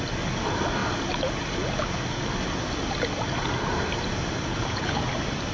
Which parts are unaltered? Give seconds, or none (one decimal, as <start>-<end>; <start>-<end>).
0.0-4.5; 5.0-5.5